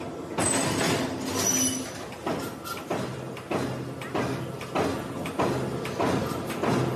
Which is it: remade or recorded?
recorded